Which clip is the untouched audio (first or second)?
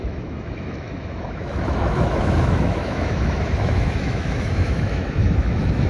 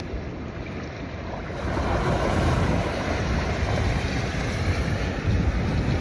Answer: second